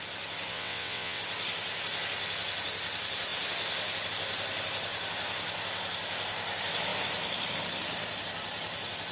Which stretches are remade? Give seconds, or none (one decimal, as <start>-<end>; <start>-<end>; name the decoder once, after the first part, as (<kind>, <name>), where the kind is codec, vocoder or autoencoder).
0.5-1.2 (vocoder, WaveNeXt)